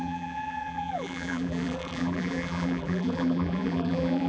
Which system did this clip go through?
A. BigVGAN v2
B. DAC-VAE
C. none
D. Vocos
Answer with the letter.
A